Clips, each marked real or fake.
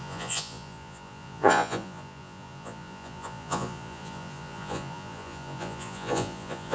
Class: fake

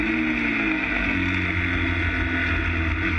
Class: real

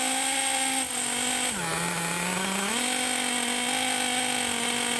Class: real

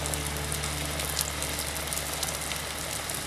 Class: real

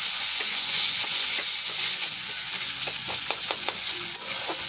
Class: fake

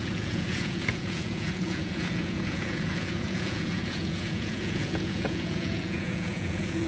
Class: fake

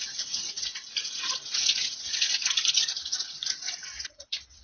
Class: fake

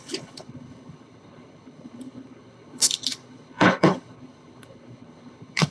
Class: fake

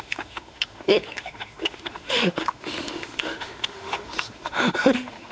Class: fake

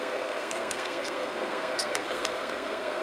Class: fake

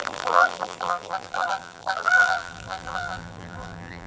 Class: fake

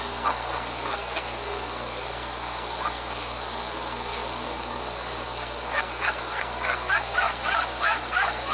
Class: fake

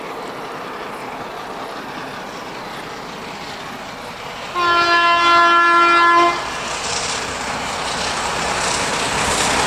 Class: real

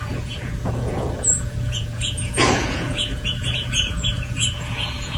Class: fake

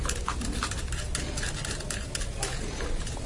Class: real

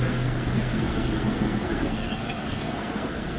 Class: fake